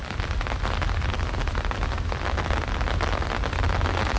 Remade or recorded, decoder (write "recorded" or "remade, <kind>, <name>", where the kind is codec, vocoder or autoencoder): recorded